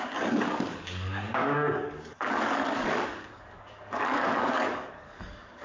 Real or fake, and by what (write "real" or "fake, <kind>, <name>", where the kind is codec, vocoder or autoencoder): fake, codec, DAC